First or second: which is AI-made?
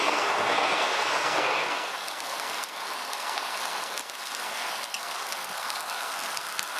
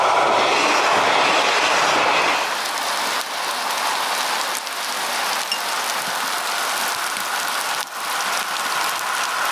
first